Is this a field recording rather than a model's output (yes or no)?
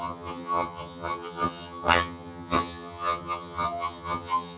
no